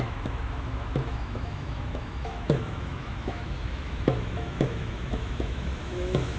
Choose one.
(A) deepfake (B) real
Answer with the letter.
A